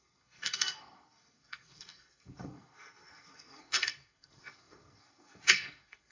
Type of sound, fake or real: fake